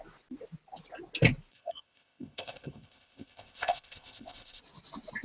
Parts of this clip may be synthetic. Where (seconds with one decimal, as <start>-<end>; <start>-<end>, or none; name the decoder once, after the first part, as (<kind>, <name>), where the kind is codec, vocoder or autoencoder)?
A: 1.5-4.6 (codec, ZipCodec)